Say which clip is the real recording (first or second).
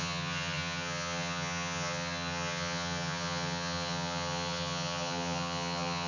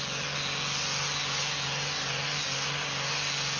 second